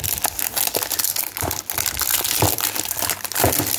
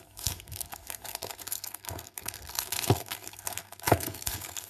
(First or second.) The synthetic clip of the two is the second